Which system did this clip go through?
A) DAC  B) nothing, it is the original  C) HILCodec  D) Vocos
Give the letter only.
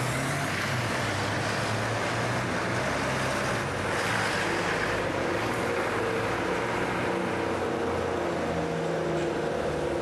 B